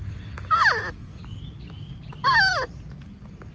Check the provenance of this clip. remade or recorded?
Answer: recorded